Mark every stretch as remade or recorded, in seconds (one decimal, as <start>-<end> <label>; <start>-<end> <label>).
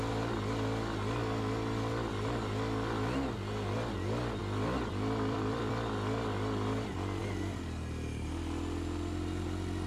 0.0-4.4 recorded; 4.4-5.7 remade; 5.7-9.9 recorded